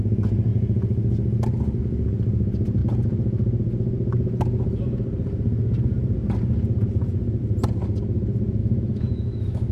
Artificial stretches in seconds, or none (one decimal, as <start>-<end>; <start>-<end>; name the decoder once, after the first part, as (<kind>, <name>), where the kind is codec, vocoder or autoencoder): 8.6-9.7 (autoencoder, DAC-VAE)